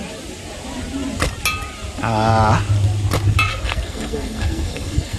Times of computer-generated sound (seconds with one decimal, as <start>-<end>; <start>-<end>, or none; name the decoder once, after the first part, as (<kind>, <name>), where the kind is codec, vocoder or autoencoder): 3.5-5.2 (codec, SNAC)